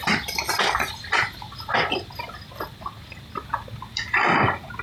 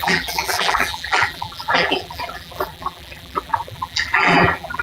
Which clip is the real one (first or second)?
first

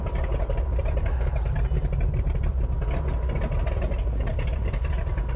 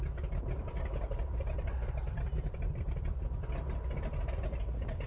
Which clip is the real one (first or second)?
first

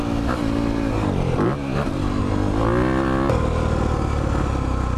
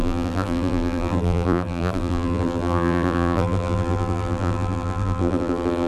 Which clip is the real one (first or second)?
first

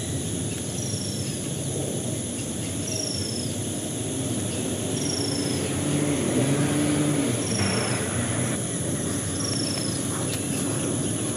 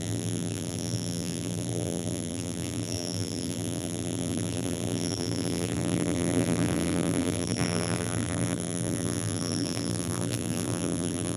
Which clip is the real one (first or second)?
first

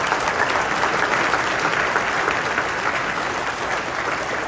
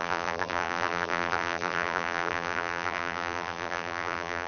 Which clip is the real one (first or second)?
first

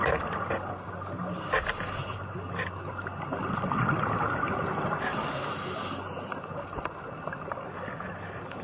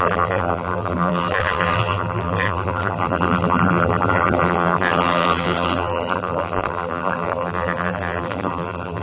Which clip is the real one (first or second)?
first